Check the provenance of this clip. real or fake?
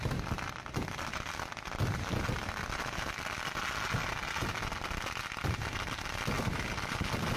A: real